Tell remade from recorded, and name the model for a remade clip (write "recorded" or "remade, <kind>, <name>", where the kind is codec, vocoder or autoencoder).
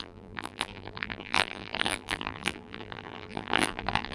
remade, vocoder, BigVGAN v2